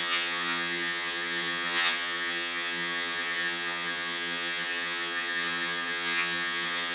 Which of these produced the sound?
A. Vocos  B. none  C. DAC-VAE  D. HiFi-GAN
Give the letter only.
D